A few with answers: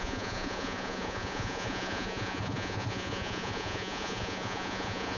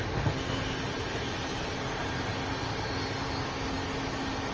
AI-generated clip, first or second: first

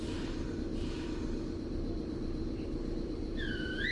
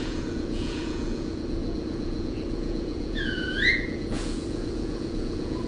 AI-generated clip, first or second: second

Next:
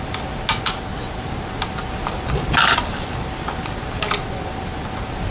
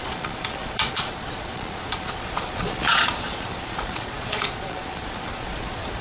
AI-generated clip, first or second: second